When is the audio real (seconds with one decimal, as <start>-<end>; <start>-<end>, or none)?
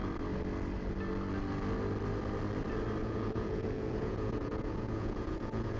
0.0-3.0